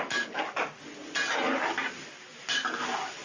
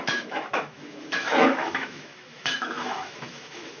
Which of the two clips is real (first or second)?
first